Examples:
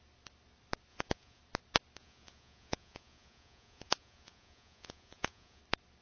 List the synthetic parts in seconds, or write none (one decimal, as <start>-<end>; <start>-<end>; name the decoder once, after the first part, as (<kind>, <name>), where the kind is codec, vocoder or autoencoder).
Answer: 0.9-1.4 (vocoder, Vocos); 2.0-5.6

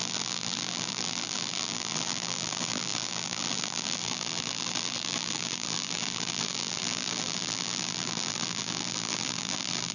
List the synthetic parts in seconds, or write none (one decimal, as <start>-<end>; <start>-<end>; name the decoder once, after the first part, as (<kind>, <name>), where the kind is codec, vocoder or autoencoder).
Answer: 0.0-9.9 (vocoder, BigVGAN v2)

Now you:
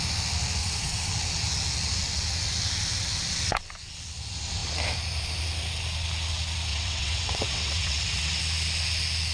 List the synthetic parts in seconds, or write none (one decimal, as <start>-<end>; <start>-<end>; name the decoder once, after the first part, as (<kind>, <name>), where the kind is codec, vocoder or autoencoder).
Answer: 0.6-1.1 (vocoder, WaveNeXt); 6.7-8.4

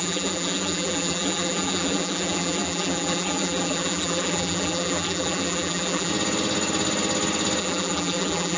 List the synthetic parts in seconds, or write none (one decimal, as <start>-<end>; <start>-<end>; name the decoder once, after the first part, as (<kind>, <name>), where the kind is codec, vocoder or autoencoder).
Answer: 0.0-6.1 (vocoder, BigVGAN v2); 7.6-8.6